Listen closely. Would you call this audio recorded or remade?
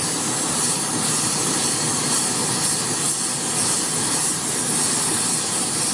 recorded